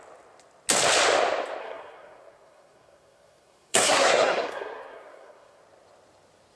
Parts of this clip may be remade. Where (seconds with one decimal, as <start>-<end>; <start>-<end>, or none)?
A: 1.6-5.6